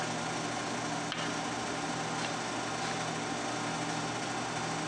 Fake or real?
real